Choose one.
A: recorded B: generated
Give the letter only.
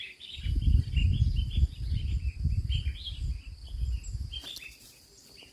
A